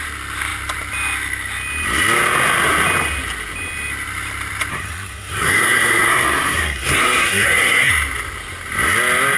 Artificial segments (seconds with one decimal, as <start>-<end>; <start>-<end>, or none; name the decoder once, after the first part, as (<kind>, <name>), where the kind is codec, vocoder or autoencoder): 4.7-7.9 (codec, SNAC)